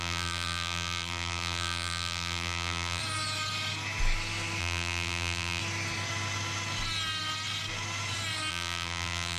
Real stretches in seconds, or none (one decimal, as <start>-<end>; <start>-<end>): 3.0-4.6; 5.6-8.5